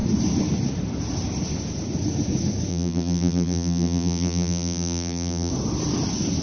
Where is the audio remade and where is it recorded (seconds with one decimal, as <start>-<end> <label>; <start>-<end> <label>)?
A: 0.0-2.7 recorded; 2.7-5.5 remade; 5.5-6.4 recorded